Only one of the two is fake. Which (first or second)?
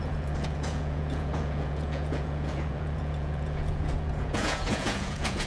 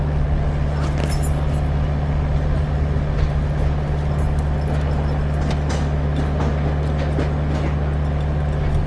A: first